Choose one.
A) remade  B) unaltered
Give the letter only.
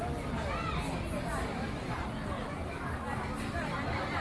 B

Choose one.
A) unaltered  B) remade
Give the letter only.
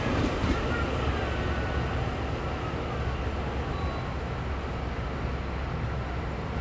A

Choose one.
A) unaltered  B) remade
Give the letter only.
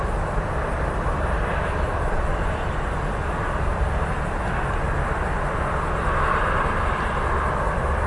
A